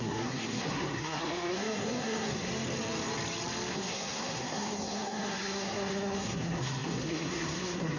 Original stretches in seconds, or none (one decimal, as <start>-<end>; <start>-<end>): 2.5-3.7